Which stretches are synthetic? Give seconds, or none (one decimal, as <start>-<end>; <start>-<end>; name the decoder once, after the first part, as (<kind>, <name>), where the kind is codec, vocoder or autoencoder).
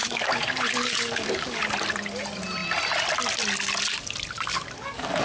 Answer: 0.0-1.6 (codec, DAC); 4.5-5.2